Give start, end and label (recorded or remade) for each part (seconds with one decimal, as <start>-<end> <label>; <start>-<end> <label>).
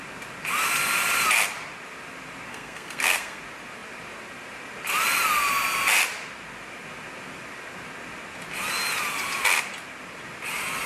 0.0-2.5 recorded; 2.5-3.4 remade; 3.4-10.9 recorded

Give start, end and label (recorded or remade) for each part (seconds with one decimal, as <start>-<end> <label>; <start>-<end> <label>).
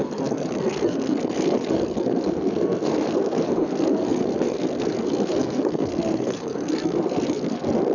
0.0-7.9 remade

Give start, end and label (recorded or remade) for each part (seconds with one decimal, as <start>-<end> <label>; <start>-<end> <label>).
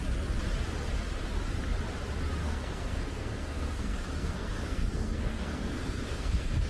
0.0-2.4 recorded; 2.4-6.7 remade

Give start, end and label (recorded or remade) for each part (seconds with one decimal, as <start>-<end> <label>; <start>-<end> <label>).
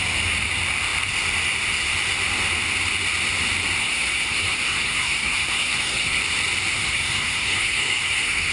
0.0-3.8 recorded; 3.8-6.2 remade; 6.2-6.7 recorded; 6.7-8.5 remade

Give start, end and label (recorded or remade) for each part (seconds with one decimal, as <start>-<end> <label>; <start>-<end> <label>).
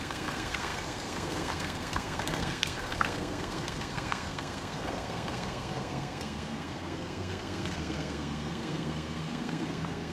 0.0-10.1 remade